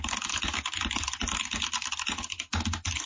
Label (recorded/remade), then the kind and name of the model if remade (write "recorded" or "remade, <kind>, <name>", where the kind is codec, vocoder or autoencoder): recorded